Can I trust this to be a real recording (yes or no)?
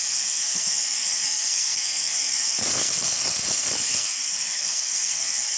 no